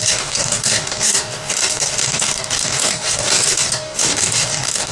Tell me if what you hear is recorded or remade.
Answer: remade